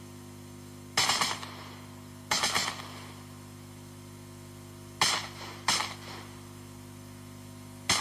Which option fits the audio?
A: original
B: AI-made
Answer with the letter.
A